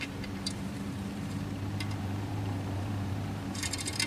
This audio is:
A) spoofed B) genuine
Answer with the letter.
A